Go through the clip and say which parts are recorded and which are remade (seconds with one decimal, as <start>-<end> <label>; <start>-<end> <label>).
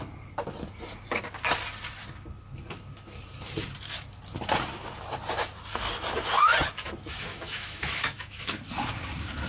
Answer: 0.0-7.3 recorded; 7.3-8.6 remade; 8.6-9.5 recorded